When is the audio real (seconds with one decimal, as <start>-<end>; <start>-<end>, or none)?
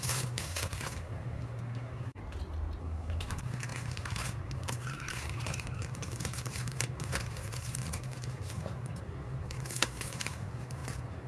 2.2-2.8